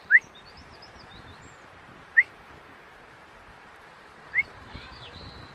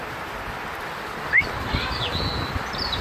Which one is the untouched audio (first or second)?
second